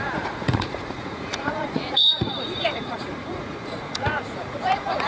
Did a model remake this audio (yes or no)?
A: yes